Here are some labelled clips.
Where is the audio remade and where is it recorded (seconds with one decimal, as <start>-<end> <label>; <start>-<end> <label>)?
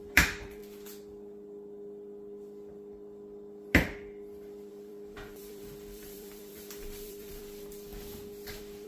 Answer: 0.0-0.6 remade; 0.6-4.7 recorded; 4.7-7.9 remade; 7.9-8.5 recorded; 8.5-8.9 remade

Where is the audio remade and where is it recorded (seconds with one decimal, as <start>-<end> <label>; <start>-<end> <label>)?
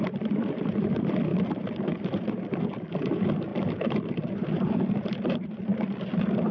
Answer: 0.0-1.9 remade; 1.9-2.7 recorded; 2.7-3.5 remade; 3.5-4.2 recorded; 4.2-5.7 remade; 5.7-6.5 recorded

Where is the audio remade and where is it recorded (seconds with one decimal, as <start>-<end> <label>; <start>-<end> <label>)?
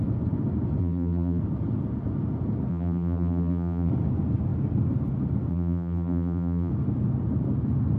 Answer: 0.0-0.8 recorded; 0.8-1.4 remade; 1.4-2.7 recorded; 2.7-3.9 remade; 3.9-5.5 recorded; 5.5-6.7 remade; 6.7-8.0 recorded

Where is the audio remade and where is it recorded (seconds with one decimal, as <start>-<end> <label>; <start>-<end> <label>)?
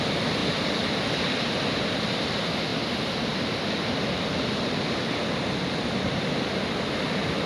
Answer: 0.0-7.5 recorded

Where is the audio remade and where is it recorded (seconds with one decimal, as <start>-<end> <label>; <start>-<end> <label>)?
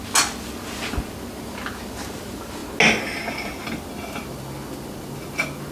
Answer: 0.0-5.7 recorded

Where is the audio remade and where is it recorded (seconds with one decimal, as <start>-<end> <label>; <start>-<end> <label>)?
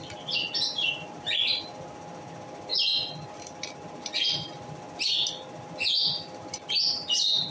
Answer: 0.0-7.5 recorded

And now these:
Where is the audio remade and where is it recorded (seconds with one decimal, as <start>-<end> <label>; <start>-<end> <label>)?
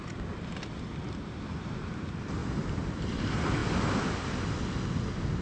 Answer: 0.0-2.4 recorded; 2.4-2.9 remade; 2.9-5.4 recorded